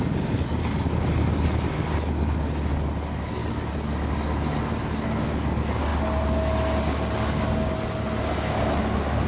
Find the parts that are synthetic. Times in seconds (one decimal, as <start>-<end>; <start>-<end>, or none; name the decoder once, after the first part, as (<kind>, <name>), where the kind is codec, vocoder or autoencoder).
none